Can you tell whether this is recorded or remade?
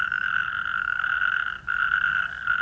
recorded